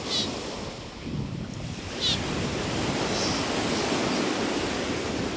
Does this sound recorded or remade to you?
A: recorded